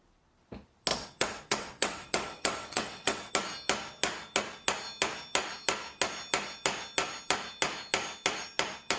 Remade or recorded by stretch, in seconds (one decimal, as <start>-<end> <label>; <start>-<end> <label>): 0.0-0.9 recorded; 0.9-3.3 remade; 3.3-9.0 recorded